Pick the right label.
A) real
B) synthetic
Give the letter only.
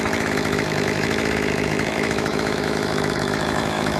B